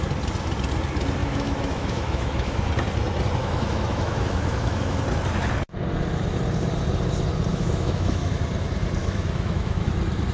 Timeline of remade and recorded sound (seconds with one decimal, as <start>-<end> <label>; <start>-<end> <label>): 0.0-1.2 recorded; 1.2-2.7 remade; 2.7-3.4 recorded; 3.4-5.0 remade; 5.0-7.5 recorded; 7.5-8.4 remade; 8.4-9.0 recorded; 9.0-9.9 remade; 9.9-10.3 recorded